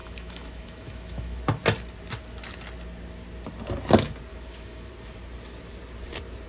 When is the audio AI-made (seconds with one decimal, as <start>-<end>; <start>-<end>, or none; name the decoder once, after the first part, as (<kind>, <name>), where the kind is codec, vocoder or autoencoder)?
0.0-1.4 (autoencoder, DAC-VAE); 4.3-4.9